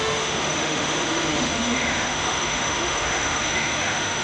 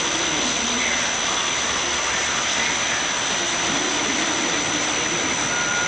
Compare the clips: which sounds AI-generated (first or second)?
first